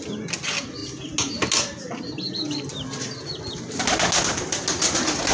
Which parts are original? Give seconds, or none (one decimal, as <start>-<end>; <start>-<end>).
0.0-5.3